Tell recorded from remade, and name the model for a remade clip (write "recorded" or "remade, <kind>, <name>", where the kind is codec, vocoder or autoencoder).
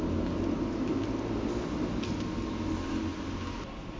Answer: recorded